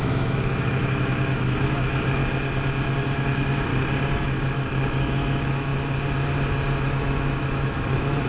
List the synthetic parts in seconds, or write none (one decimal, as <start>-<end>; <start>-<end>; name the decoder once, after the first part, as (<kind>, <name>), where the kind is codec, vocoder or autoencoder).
0.0-2.2 (autoencoder, DAC-VAE); 3.0-3.7; 4.2-5.7; 6.8-8.3